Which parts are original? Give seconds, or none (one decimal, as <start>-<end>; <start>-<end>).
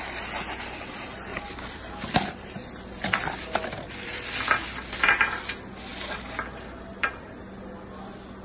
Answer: 0.0-1.3; 4.3-8.4